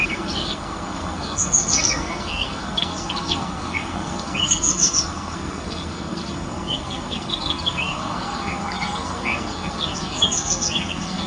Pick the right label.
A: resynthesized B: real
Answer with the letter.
A